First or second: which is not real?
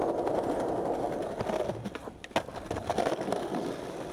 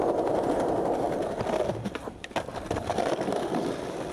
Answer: second